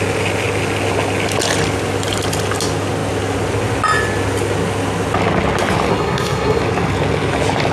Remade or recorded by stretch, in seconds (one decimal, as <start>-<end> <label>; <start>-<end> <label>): 0.0-5.9 recorded; 5.9-6.6 remade; 6.6-7.7 recorded